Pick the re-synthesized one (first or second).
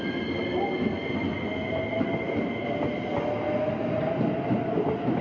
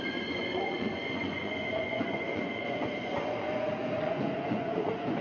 second